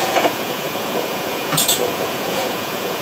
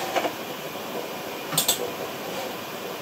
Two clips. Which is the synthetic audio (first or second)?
first